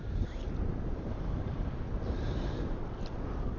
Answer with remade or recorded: recorded